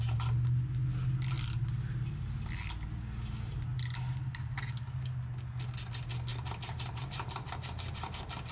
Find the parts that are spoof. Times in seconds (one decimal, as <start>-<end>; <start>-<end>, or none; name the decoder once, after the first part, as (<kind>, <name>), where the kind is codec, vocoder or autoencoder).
6.3-8.5 (vocoder, BigVGAN v2)